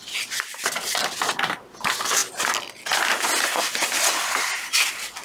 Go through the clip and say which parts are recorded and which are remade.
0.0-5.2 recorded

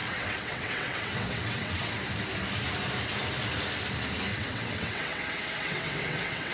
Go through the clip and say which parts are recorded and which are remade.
0.0-1.9 remade; 1.9-4.3 recorded; 4.3-6.5 remade

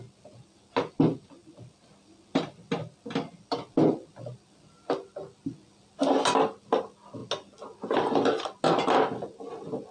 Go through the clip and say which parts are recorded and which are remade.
0.0-9.9 recorded

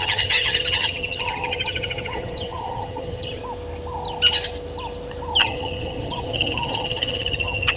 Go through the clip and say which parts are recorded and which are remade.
0.0-3.4 remade; 3.4-5.4 recorded; 5.4-7.8 remade

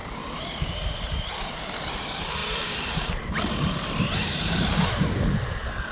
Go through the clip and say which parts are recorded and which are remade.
0.0-2.4 recorded; 2.4-4.7 remade; 4.7-5.9 recorded